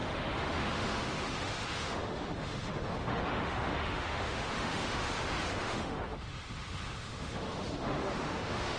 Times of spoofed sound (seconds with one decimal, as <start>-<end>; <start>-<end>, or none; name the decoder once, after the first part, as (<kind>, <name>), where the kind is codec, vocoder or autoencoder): 0.0-8.8 (autoencoder, DAC-VAE)